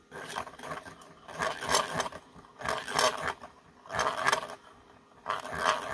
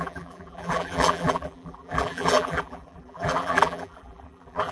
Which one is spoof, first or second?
second